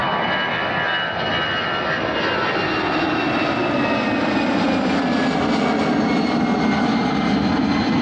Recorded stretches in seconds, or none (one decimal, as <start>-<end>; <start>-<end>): 0.0-8.0